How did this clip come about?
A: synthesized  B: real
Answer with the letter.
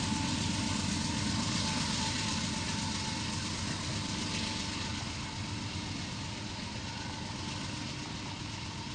B